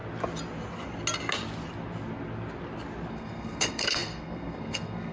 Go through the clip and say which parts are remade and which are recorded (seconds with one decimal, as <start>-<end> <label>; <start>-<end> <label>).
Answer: 0.0-3.1 recorded; 3.1-5.1 remade